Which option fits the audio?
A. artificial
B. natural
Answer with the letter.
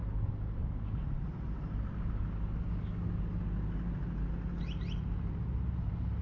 B